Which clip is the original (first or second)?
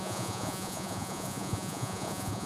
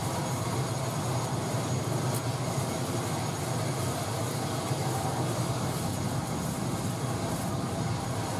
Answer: second